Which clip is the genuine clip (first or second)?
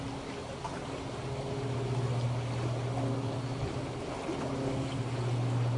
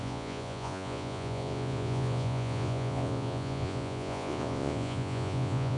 first